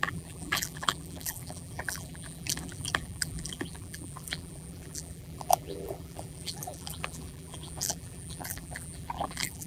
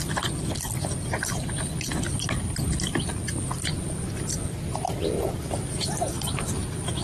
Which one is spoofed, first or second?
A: first